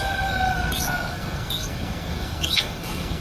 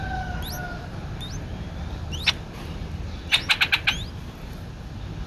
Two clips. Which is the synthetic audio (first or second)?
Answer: first